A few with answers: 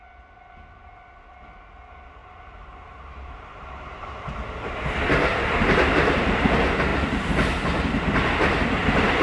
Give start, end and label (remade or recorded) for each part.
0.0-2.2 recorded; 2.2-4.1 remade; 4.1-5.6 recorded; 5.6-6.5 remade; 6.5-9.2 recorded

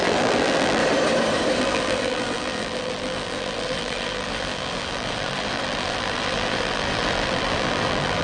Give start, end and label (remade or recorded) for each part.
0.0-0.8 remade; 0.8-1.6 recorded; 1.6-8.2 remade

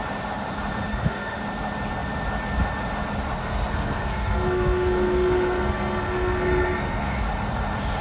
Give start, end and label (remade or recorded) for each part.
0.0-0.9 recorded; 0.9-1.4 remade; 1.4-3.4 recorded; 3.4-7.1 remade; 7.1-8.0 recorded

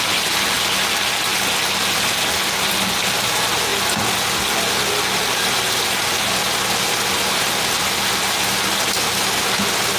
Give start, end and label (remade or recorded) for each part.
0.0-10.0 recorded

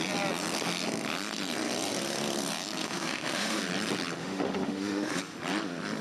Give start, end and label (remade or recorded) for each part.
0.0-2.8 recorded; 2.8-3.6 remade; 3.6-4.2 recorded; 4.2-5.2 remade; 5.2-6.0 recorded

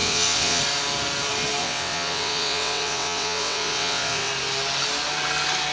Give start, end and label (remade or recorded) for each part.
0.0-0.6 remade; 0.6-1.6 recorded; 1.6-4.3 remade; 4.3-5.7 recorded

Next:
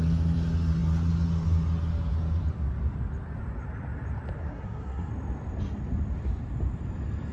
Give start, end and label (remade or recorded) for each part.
0.0-4.4 recorded; 4.4-5.1 remade; 5.1-7.3 recorded